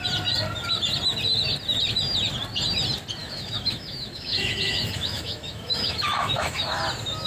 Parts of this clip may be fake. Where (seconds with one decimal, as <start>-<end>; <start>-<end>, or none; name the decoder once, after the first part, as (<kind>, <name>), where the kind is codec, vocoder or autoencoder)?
3.2-6.7 (autoencoder, DAC-VAE)